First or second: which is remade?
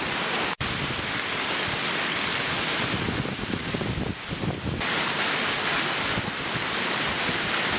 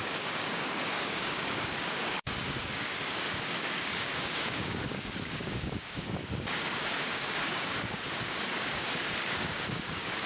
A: second